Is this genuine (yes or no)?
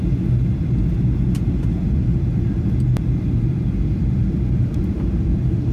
yes